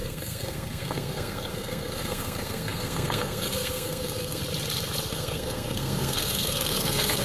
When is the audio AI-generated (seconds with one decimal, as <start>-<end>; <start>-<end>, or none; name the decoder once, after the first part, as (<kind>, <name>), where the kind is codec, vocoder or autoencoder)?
0.0-4.4 (codec, SNAC); 5.1-7.2